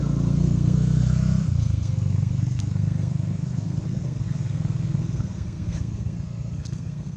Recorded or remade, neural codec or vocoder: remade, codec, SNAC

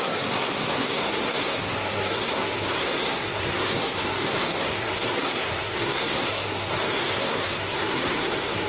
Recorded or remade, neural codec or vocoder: remade, codec, SNAC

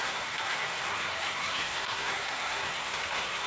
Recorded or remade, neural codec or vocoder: remade, codec, SNAC